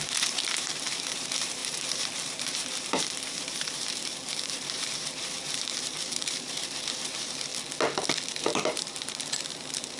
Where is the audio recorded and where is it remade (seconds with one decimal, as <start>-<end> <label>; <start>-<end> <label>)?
0.0-7.5 remade; 7.5-8.3 recorded; 8.3-10.0 remade